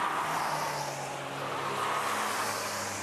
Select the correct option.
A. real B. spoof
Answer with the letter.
A